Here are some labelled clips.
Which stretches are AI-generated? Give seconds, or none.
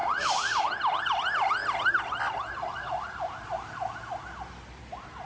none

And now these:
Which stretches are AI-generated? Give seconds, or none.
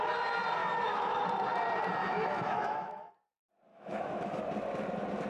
0.6-1.2 (autoencoder, DAC-VAE); 2.0-3.1; 3.7-4.4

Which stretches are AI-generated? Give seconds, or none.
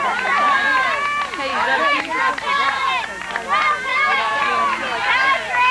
1.5-2.2 (autoencoder, DAC-VAE); 3.9-4.4